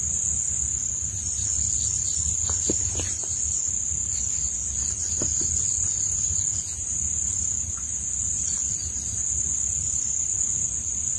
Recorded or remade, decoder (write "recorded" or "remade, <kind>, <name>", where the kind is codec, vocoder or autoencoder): recorded